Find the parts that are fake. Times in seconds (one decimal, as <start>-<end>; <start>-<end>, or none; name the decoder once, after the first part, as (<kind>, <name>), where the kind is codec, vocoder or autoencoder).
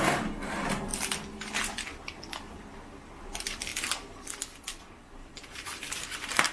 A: 0.0-0.9 (vocoder, BigVGAN v2); 3.2-3.7; 4.8-6.5